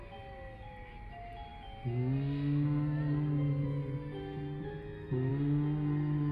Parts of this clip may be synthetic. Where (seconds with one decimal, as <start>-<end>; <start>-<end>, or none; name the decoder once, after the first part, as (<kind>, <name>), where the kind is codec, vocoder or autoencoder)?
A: none